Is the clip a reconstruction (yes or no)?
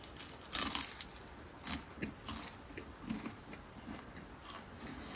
no